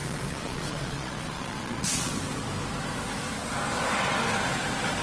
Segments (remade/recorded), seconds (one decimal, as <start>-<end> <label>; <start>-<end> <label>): 0.0-2.1 remade; 2.1-5.0 recorded